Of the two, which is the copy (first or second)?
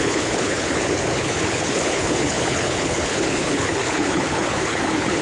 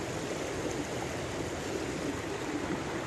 first